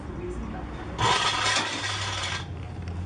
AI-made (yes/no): no